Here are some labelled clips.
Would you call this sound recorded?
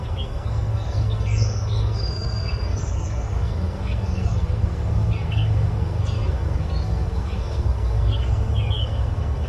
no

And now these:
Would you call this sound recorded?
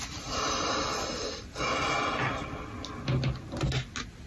yes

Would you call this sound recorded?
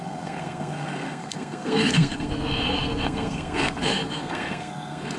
no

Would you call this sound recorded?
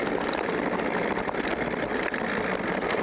yes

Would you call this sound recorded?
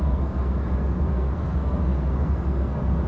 no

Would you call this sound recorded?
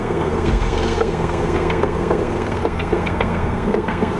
no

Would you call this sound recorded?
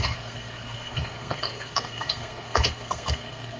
no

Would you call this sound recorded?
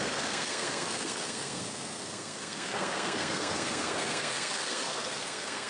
no